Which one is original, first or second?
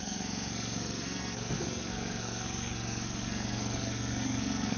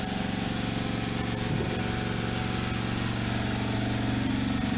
second